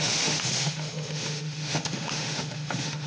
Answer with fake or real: fake